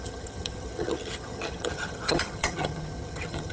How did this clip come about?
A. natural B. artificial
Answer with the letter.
B